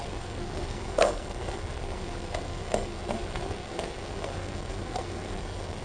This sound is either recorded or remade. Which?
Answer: remade